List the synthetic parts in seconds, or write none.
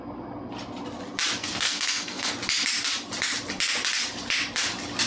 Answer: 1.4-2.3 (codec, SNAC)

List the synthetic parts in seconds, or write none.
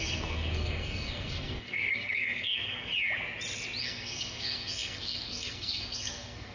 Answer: 0.0-2.9 (codec, SNAC); 3.8-6.5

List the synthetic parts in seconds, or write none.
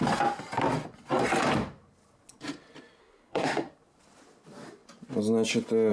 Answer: 3.0-3.7 (codec, SNAC)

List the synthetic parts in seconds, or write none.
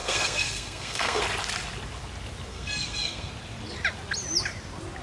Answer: 0.0-1.2 (codec, SNAC); 2.5-3.3